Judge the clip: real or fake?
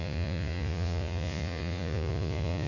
fake